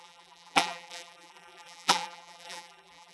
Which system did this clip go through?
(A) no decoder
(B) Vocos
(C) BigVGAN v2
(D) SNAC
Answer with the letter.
C